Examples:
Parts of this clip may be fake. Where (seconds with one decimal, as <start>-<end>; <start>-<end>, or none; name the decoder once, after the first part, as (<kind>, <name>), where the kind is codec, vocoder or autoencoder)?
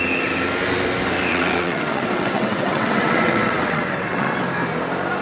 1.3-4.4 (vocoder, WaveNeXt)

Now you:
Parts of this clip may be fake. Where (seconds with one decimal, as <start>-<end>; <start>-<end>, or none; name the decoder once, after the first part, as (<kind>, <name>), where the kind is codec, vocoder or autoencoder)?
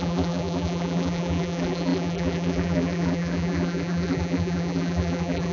0.0-5.5 (vocoder, BigVGAN v2)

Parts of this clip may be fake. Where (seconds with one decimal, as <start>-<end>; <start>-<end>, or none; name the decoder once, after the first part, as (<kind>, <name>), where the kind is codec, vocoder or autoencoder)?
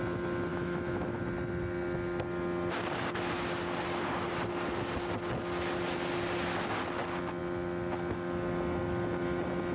0.5-1.2 (autoencoder, DAC-VAE)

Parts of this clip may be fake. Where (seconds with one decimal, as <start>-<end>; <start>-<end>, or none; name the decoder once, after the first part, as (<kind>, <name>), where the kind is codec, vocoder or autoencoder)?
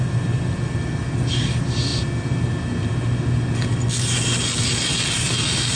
none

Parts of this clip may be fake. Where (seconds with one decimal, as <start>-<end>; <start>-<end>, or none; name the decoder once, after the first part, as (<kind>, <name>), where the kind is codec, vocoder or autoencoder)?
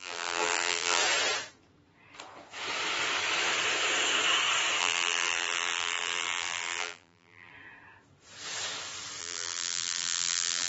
0.0-1.0 (vocoder, BigVGAN v2); 4.8-7.5; 9.2-10.7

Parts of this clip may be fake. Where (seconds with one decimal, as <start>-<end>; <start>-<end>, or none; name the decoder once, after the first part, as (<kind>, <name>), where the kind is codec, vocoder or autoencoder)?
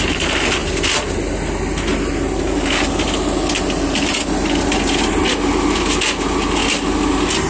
none